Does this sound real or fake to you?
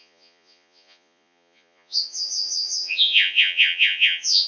fake